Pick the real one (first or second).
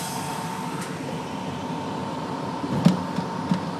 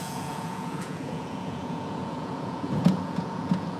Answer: first